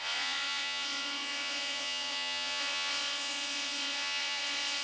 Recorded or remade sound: remade